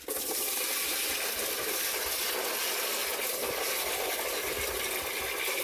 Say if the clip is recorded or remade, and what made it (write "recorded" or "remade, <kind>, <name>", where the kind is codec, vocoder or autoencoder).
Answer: recorded